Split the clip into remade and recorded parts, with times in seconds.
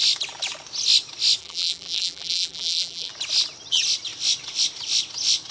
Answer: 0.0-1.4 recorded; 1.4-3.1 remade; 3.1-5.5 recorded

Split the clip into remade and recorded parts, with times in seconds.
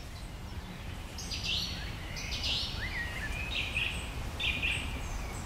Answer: 0.0-0.5 recorded; 0.5-3.8 remade; 3.8-5.5 recorded